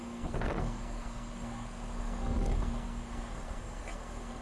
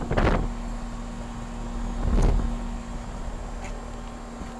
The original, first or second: second